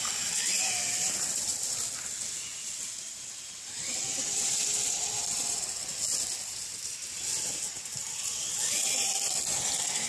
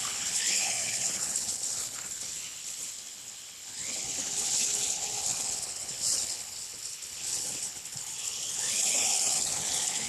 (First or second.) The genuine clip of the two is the first